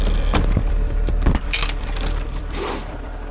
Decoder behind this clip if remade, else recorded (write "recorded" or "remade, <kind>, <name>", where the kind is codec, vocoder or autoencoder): remade, vocoder, BigVGAN v2